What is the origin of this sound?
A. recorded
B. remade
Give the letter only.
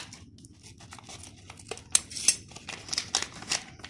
A